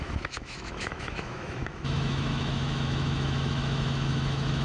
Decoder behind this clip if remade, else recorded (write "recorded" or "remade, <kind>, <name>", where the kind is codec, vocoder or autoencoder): remade, autoencoder, DAC-VAE